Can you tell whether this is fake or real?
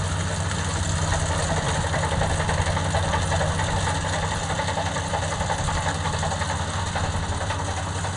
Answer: real